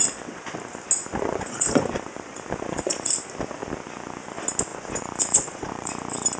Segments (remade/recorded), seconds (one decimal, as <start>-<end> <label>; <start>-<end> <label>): 0.0-1.0 recorded; 1.0-3.1 remade; 3.1-4.7 recorded; 4.7-5.9 remade; 5.9-6.4 recorded